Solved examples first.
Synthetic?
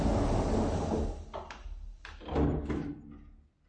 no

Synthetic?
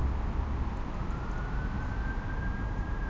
no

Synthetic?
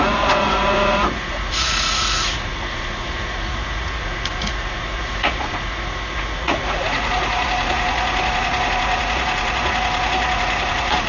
yes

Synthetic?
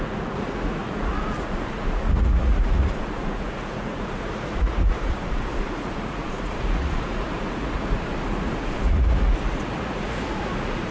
yes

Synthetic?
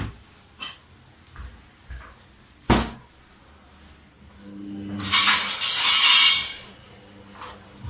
no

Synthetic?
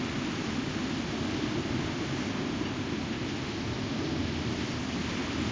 no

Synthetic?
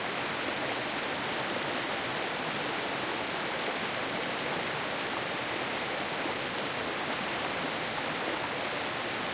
no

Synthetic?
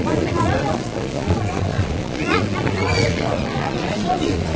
yes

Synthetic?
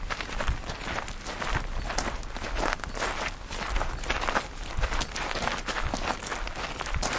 no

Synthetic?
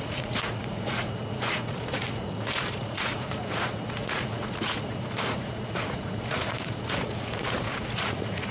yes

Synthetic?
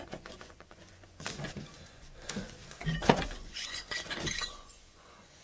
yes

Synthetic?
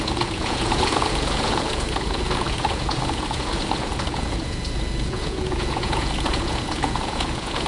yes